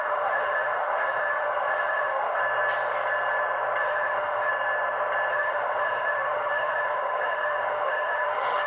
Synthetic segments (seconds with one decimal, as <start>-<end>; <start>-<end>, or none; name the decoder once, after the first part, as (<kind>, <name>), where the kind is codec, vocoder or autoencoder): 0.0-2.4 (autoencoder, DAC-VAE); 3.8-4.5; 5.3-8.7